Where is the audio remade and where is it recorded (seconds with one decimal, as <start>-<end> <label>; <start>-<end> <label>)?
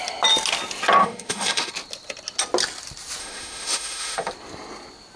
0.0-1.0 recorded; 1.0-1.7 remade; 1.7-3.2 recorded; 3.2-4.3 remade; 4.3-5.2 recorded